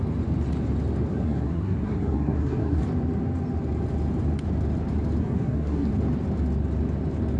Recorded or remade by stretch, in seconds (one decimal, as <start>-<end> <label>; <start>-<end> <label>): 0.0-1.1 recorded; 1.1-2.8 remade; 2.8-5.2 recorded; 5.2-5.9 remade; 5.9-7.4 recorded